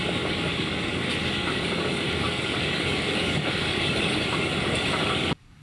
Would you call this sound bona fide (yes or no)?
no